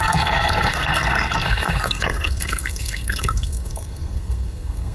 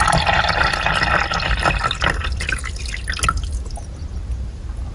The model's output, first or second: first